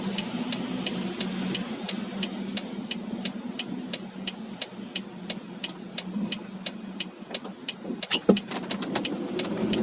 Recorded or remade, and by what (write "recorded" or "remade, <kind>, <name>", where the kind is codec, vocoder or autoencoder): recorded